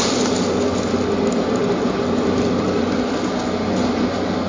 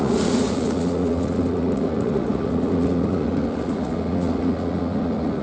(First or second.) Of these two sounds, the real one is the first